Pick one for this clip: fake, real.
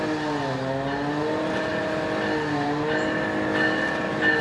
real